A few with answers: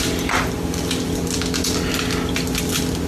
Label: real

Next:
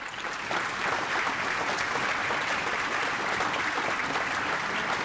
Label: real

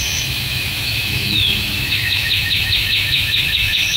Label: fake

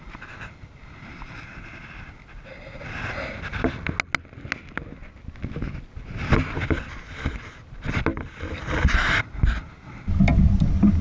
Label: real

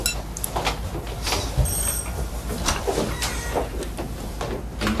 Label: real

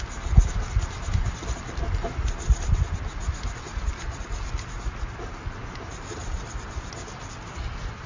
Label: real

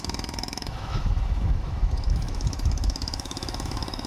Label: fake